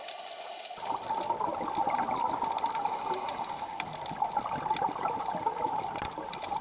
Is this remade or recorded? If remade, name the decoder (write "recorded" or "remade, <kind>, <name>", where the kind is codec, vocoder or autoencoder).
recorded